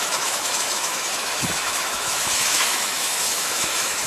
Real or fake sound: fake